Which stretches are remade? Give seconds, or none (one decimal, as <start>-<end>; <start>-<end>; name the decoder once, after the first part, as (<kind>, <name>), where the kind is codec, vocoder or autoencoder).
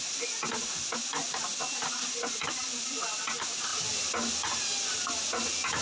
none